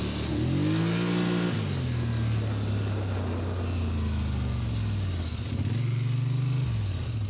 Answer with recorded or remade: recorded